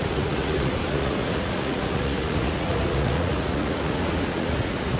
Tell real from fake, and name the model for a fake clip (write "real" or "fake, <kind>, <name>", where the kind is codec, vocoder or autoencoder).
fake, vocoder, Vocos